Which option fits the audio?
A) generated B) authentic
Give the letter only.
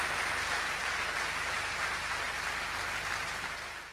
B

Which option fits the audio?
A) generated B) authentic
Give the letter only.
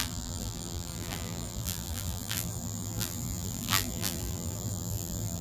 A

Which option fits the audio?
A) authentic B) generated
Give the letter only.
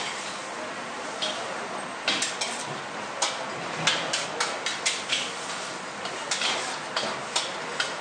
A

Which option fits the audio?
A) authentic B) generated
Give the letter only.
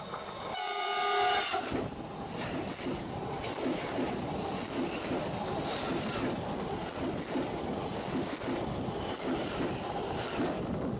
A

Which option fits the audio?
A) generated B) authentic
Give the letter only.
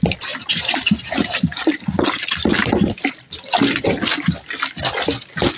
A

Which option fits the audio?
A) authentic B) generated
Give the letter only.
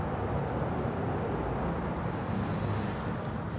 A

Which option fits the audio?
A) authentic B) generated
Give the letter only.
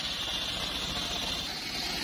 A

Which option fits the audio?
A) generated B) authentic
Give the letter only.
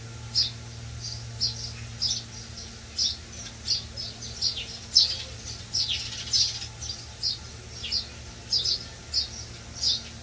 B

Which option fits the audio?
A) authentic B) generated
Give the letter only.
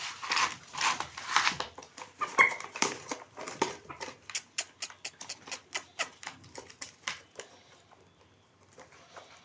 B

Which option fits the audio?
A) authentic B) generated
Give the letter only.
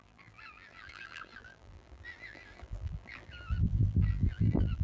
B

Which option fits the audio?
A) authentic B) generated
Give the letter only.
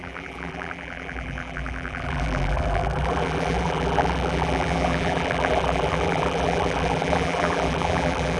B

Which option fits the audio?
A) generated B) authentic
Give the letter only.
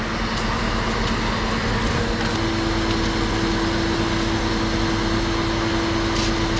B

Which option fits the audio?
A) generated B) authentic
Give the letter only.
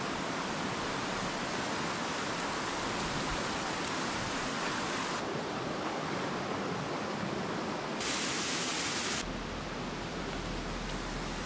B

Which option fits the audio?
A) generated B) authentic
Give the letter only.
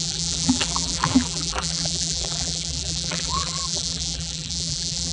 A